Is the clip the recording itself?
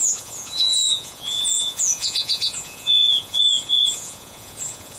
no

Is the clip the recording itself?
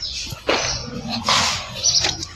no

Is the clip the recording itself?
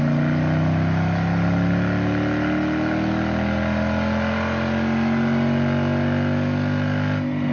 yes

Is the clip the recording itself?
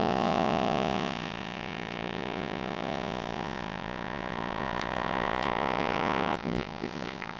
no